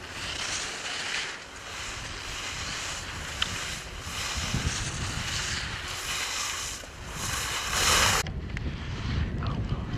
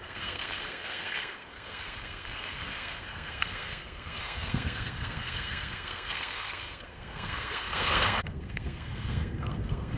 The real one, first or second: first